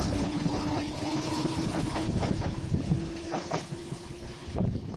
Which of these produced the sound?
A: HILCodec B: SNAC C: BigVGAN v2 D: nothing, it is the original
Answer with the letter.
A